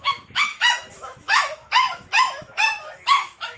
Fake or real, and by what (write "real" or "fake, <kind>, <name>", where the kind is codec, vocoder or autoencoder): fake, autoencoder, DAC-VAE